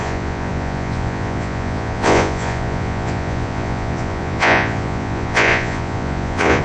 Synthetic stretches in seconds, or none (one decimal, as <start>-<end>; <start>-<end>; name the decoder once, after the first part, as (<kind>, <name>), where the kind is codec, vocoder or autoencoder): 0.0-6.6 (vocoder, Vocos)